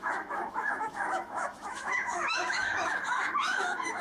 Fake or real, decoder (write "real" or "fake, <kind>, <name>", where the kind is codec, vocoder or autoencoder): fake, autoencoder, DAC-VAE